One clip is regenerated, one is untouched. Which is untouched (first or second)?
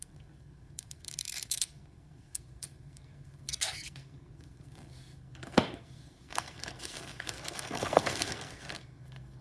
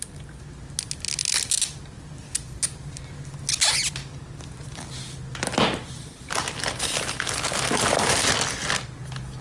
second